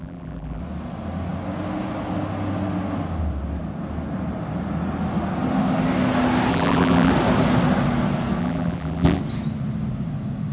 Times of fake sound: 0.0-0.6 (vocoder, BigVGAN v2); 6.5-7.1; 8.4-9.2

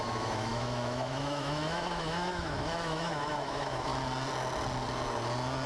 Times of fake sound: 0.0-3.9 (autoencoder, DAC-VAE)

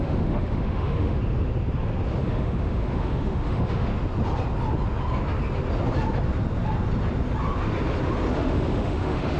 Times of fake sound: 0.0-1.2 (autoencoder, DAC-VAE); 2.2-3.9; 8.3-9.4